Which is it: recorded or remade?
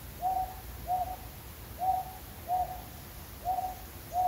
recorded